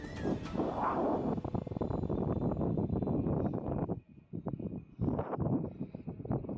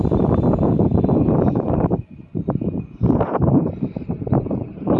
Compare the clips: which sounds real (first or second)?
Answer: first